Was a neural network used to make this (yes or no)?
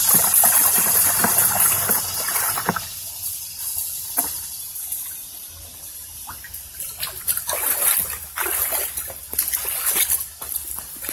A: no